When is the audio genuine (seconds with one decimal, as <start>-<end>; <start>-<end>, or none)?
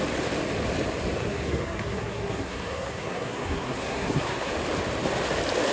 0.0-1.2; 4.5-5.7